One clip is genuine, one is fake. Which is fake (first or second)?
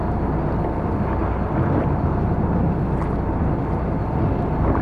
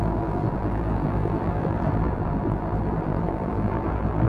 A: second